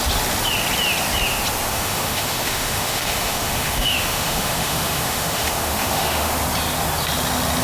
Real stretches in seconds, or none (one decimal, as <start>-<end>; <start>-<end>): 0.0-1.7; 6.3-7.6